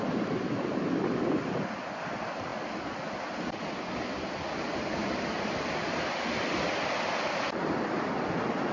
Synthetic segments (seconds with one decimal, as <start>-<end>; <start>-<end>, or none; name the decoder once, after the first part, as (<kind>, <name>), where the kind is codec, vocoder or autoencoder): none